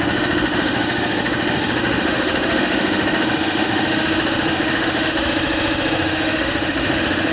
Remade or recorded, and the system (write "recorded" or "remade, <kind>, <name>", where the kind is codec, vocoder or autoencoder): remade, autoencoder, DAC-VAE